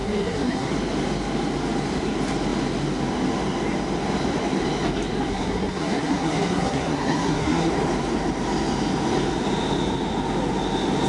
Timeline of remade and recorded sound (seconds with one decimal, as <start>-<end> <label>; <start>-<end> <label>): 0.0-0.7 remade; 0.7-5.3 recorded; 5.3-7.7 remade; 7.7-11.1 recorded